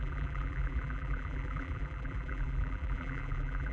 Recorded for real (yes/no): no